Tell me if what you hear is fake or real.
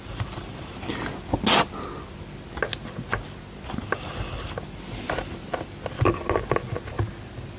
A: real